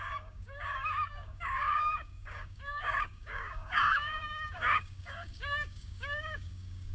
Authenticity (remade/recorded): remade